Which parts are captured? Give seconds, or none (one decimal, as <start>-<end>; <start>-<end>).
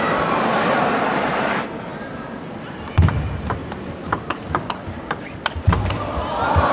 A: 0.0-6.7